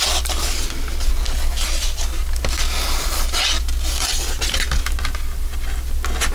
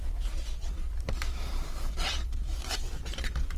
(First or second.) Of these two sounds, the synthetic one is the second